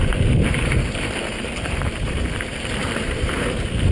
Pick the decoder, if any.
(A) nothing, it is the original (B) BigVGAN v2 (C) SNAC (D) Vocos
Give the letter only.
B